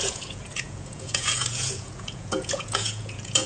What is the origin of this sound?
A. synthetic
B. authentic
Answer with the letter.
A